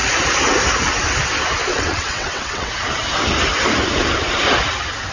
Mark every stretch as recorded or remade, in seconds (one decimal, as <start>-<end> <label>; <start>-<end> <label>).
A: 0.0-1.7 recorded; 1.7-2.7 remade; 2.7-5.1 recorded